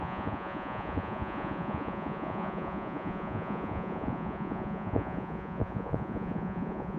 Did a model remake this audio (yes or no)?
yes